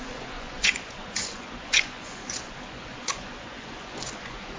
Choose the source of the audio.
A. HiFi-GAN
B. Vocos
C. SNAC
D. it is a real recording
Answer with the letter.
B